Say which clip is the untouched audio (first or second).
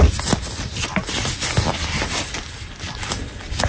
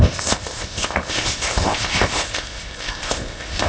first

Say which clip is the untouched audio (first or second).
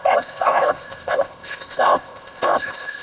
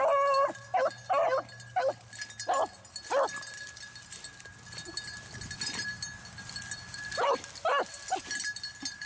second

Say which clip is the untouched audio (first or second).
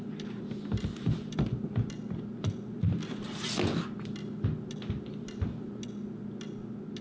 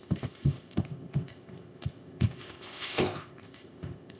first